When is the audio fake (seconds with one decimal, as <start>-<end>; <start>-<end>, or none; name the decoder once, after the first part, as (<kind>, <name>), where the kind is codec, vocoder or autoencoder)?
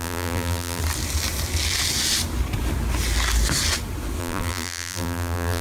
0.0-0.8 (vocoder, BigVGAN v2); 4.2-5.6